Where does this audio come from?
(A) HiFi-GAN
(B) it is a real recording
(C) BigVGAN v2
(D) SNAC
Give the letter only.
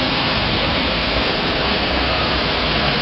D